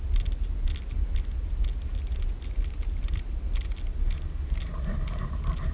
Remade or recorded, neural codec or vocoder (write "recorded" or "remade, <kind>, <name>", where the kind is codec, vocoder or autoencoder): recorded